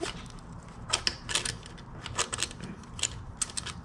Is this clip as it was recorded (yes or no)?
yes